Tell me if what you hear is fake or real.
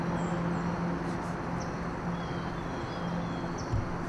real